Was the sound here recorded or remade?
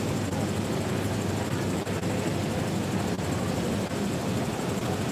recorded